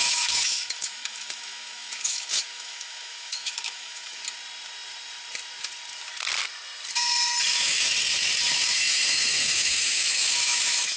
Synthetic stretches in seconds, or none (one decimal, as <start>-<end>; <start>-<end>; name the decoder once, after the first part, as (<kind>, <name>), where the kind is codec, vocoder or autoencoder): 0.0-4.2 (autoencoder, DAC-VAE); 7.5-7.9; 8.5-11.0